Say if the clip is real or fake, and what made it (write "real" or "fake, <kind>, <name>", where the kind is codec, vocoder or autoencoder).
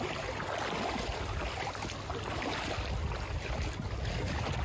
real